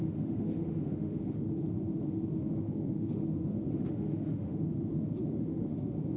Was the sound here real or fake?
fake